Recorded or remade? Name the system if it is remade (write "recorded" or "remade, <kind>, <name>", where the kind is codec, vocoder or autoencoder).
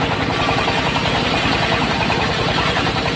remade, vocoder, BigVGAN v2